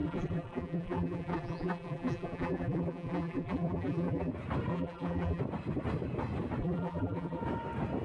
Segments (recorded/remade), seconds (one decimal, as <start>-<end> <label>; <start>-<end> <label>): 0.0-4.3 remade; 4.3-4.7 recorded; 4.7-5.4 remade; 5.4-6.6 recorded; 6.6-7.4 remade; 7.4-8.0 recorded